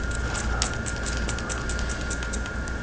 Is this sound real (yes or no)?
yes